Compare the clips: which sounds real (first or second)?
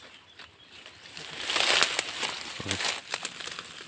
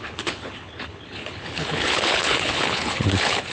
first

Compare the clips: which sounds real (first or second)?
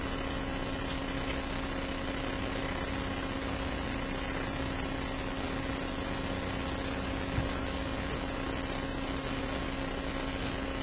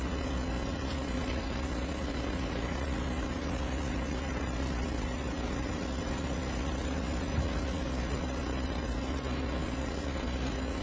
first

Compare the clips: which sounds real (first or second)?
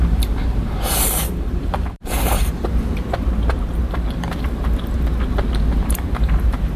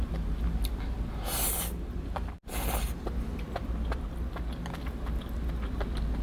second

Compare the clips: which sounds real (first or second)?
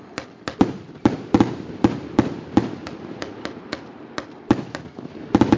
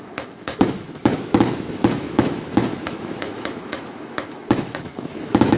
first